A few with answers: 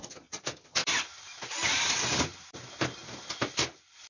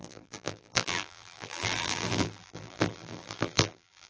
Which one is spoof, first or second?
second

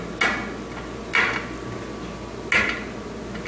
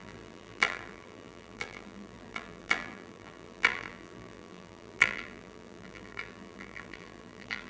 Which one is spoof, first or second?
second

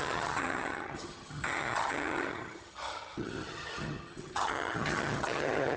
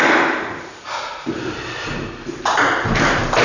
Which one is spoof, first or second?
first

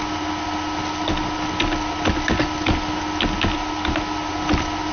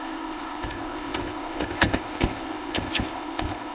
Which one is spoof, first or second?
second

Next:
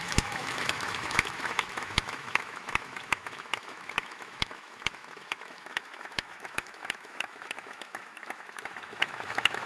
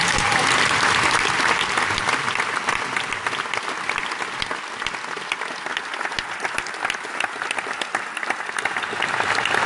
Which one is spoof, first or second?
first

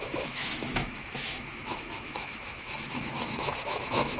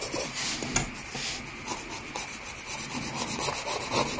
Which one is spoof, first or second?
first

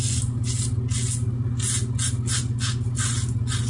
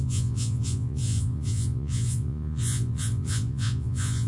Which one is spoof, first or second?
second